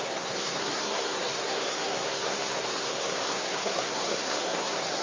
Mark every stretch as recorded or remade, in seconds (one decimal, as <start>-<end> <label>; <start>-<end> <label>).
0.0-5.0 remade